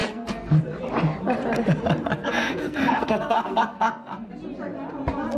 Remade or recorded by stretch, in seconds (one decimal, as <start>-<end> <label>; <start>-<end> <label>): 0.0-0.6 remade; 0.6-2.1 recorded; 2.1-4.3 remade; 4.3-5.4 recorded